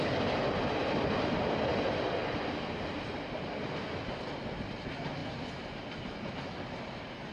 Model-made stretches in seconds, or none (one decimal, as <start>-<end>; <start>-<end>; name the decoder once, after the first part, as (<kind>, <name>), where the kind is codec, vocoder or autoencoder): none